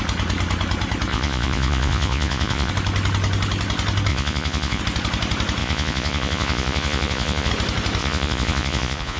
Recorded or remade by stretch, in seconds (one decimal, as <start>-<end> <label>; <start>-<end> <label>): 0.0-1.1 recorded; 1.1-2.7 remade; 2.7-4.1 recorded; 4.1-4.8 remade; 4.8-5.6 recorded; 5.6-7.5 remade; 7.5-8.0 recorded; 8.0-9.2 remade